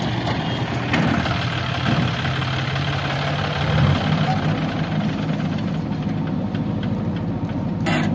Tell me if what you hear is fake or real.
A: real